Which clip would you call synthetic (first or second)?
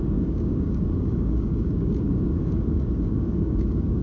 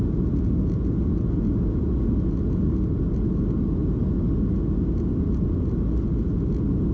first